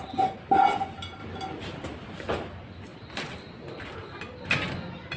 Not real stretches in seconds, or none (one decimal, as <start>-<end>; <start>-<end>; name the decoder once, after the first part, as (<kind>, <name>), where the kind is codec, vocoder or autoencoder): none